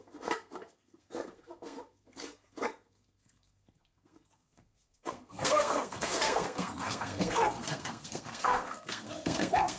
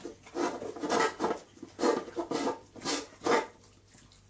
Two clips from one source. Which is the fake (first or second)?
first